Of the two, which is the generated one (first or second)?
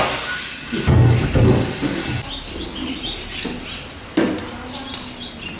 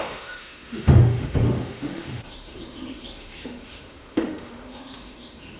second